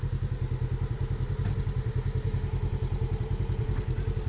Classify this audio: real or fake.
real